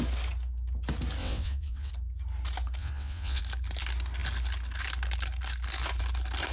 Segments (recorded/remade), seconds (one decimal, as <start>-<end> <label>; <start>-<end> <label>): 0.0-1.2 recorded; 1.2-1.9 remade; 1.9-2.8 recorded; 2.8-3.4 remade; 3.4-6.5 recorded